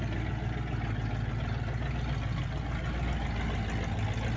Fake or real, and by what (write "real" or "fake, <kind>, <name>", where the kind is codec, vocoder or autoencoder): real